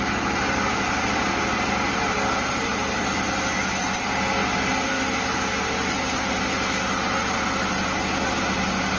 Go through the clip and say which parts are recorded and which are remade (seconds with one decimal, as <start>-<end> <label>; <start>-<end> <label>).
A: 0.0-9.0 recorded